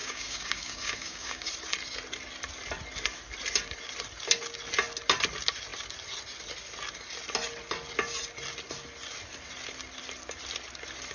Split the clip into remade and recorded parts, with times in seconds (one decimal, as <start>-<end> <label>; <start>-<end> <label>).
0.0-1.5 remade; 1.5-11.1 recorded